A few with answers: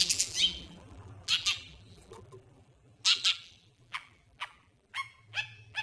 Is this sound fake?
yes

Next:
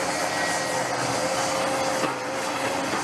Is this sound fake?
no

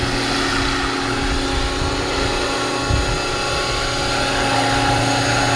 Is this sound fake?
no